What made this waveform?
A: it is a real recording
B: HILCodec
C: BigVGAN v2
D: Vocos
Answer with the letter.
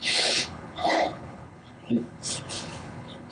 B